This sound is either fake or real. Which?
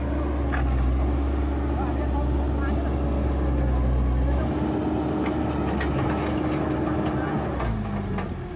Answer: real